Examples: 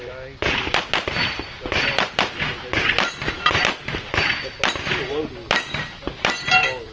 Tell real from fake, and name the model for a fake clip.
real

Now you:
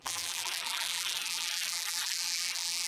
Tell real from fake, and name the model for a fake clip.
fake, vocoder, BigVGAN v2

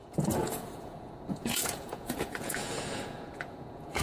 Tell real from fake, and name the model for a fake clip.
fake, vocoder, Vocos